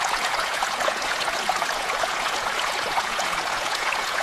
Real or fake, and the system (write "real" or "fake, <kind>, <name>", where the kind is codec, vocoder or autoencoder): fake, vocoder, Vocos